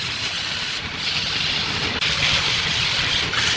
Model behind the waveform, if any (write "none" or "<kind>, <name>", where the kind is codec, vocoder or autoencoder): none